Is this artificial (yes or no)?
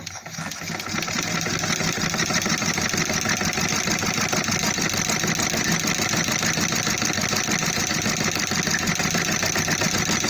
no